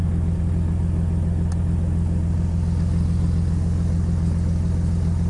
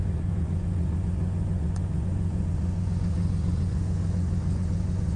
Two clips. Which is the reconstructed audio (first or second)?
second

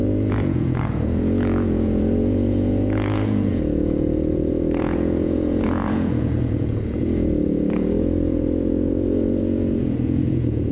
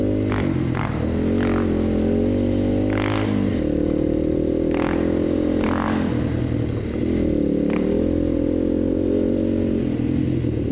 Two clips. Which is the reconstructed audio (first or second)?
first